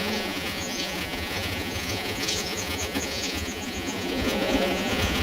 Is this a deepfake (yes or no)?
yes